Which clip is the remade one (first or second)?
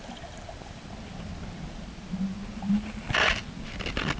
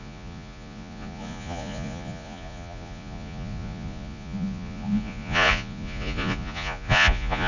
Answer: second